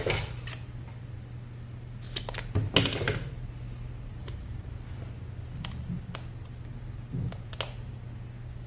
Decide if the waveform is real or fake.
real